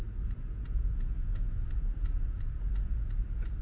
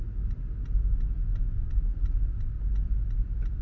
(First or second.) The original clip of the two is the second